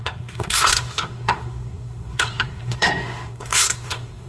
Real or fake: fake